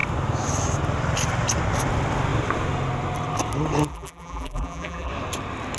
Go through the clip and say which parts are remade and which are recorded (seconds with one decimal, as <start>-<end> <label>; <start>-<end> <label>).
0.0-3.9 recorded; 3.9-5.1 remade; 5.1-5.8 recorded